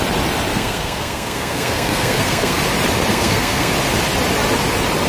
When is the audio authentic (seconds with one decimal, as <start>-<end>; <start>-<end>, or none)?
0.0-0.5; 2.6-3.1; 3.7-5.1